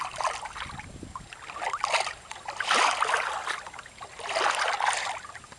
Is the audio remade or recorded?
recorded